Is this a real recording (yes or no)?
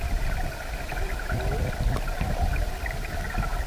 yes